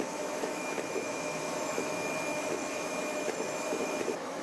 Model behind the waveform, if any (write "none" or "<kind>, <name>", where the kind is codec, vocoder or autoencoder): autoencoder, DAC-VAE